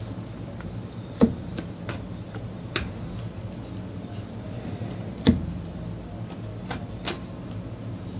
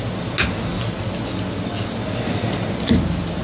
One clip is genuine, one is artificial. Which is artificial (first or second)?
first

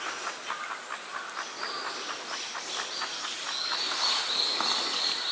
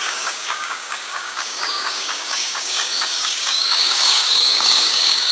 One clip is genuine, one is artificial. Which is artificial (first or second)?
second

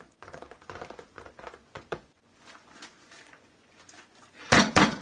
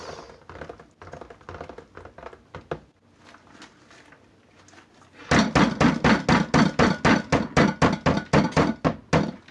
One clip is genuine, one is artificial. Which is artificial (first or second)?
first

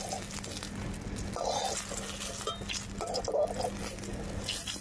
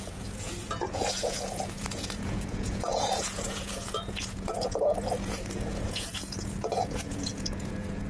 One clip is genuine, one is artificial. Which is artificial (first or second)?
second